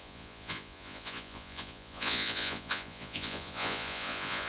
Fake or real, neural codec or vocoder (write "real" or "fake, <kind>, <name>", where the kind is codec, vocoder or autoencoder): fake, vocoder, Vocos